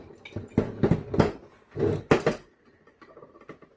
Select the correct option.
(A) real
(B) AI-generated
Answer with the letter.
A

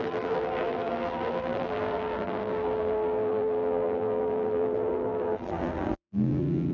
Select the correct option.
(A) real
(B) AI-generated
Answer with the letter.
B